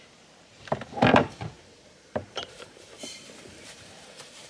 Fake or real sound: fake